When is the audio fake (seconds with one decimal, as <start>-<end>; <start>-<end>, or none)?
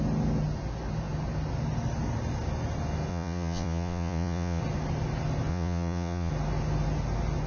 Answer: 3.1-4.6; 5.5-6.3